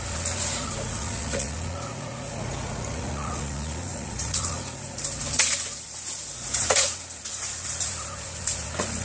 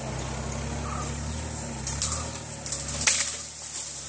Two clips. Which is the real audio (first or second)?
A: second